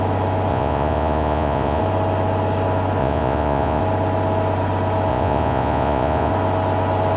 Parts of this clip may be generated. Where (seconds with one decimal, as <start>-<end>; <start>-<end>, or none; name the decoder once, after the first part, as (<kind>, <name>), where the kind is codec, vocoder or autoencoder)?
0.5-1.8 (vocoder, Vocos); 3.0-3.8; 5.1-6.3